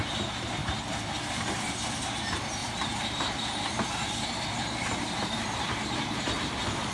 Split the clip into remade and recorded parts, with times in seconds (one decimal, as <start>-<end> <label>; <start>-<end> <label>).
0.0-0.6 recorded; 0.6-1.4 remade; 1.4-2.6 recorded; 2.6-6.9 remade